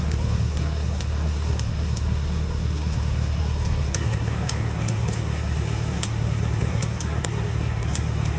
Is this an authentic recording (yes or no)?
no